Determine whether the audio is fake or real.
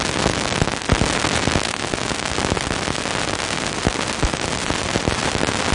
real